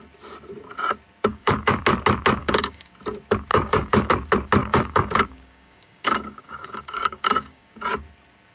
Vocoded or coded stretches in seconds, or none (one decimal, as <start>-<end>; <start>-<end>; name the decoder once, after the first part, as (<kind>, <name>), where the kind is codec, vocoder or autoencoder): 1.3-1.8 (codec, DAC); 2.4-2.9; 3.5-4.1; 4.6-7.8